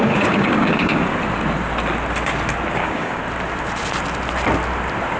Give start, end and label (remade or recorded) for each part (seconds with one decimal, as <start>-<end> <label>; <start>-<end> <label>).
0.0-1.1 remade; 1.1-2.7 recorded; 2.7-3.2 remade; 3.2-5.2 recorded